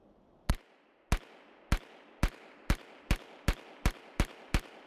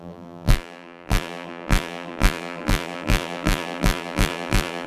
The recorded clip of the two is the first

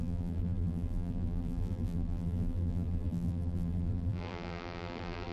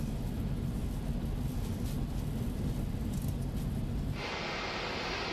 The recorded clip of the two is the second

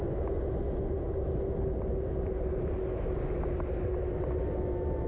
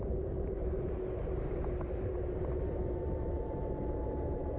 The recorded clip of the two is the first